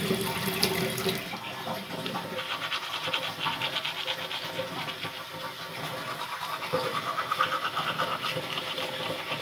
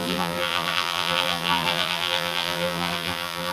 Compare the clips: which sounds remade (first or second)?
second